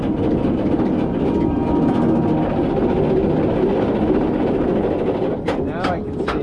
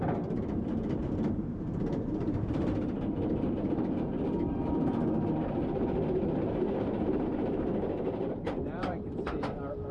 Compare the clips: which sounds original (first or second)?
first